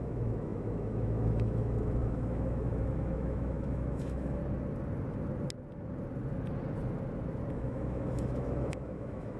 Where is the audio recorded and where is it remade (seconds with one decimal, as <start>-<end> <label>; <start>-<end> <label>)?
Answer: 0.0-4.4 remade; 4.4-7.5 recorded; 7.5-9.4 remade